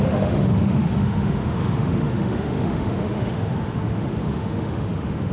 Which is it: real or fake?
fake